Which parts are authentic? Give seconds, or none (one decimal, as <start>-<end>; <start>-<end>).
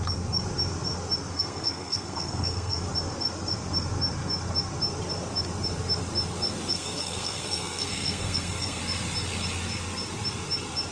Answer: 0.0-1.3; 2.8-6.7; 8.8-10.9